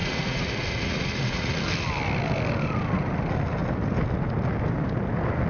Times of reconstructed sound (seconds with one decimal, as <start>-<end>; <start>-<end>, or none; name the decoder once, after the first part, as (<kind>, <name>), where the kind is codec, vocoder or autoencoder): 0.0-1.6 (vocoder, Vocos)